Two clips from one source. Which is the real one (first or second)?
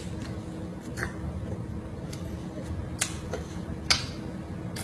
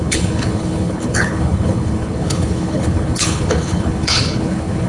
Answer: first